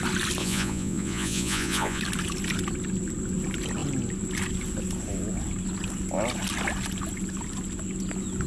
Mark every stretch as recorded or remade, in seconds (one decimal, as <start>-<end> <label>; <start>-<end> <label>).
0.0-0.4 recorded; 0.4-2.0 remade; 2.0-8.5 recorded